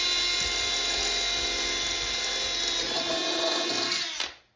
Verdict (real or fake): real